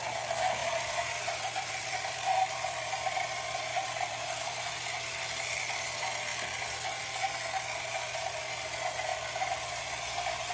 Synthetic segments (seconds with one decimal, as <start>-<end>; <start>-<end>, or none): 0.6-4.2; 9.1-10.5